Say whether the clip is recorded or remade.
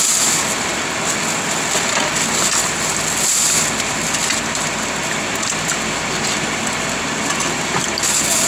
recorded